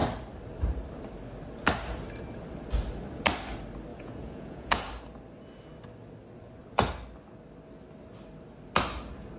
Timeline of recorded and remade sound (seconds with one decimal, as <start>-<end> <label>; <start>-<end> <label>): 0.0-3.9 recorded; 3.9-4.9 remade; 4.9-9.4 recorded